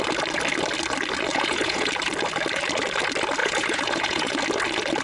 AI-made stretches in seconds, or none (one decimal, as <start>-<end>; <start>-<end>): 1.3-1.9; 3.4-4.4